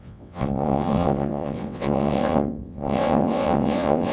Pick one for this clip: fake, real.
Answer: fake